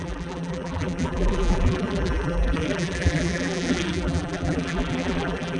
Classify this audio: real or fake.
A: fake